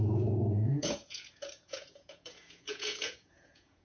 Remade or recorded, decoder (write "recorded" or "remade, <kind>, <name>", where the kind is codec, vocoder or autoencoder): remade, vocoder, Vocos